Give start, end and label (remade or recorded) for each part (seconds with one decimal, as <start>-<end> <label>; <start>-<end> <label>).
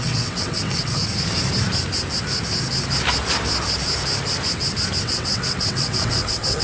0.0-1.0 remade; 1.0-5.0 recorded; 5.0-6.6 remade